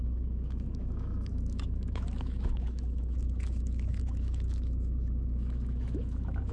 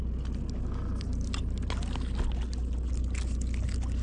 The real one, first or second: second